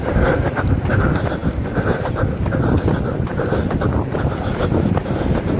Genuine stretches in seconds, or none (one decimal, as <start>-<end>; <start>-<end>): 0.0-5.6